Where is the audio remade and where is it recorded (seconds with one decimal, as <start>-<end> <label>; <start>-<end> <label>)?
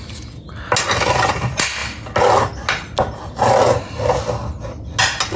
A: 0.0-5.4 recorded